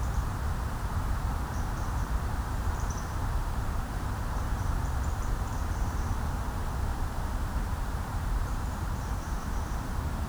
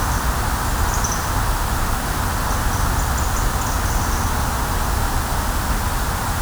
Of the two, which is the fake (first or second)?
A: first